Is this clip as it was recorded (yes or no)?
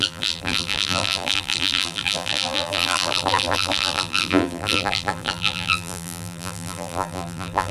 no